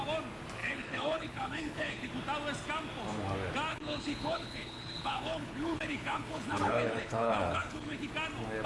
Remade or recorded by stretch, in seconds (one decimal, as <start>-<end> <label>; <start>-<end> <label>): 0.0-0.6 recorded; 0.6-2.1 remade; 2.1-3.7 recorded; 3.7-8.1 remade; 8.1-8.7 recorded